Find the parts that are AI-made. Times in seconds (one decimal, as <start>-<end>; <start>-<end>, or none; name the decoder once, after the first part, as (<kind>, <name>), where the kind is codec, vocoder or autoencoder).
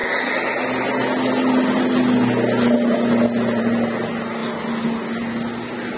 none